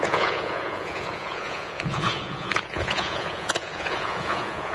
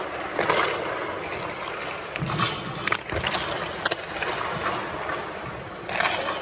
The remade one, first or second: first